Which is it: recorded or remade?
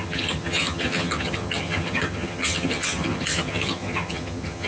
remade